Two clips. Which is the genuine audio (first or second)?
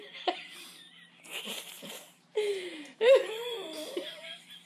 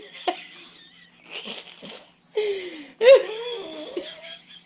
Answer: second